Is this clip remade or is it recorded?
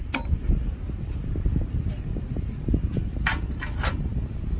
recorded